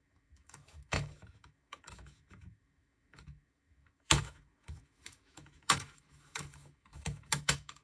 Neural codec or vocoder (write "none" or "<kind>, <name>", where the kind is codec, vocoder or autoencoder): autoencoder, DAC-VAE